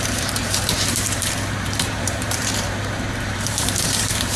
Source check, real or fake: fake